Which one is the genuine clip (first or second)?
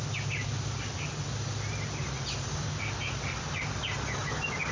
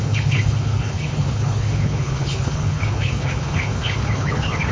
first